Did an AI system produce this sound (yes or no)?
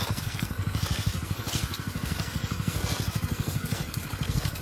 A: yes